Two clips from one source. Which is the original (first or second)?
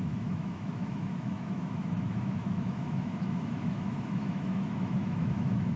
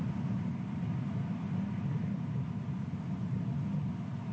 second